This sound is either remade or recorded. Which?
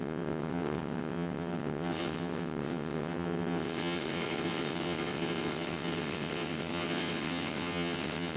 remade